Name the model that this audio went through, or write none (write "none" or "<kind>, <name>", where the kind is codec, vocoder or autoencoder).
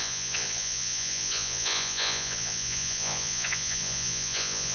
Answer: vocoder, Vocos